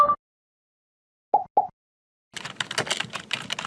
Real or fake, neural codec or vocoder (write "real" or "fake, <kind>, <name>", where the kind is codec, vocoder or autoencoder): real